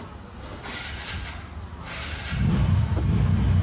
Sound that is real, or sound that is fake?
real